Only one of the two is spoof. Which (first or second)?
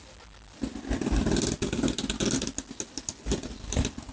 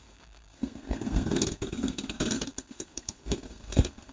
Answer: second